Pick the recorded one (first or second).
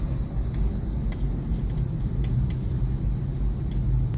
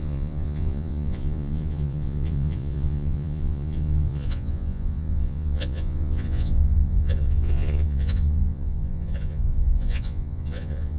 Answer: first